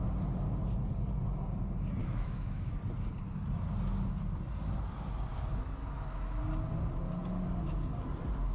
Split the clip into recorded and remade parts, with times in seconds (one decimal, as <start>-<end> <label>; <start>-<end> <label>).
0.0-2.0 recorded; 2.0-2.7 remade; 2.7-5.3 recorded; 5.3-6.4 remade; 6.4-8.5 recorded